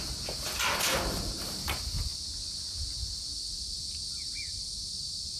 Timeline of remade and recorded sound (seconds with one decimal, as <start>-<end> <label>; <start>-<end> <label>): 0.0-5.4 recorded